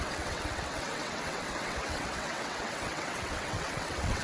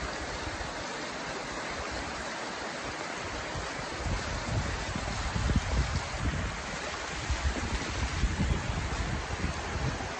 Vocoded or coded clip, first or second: first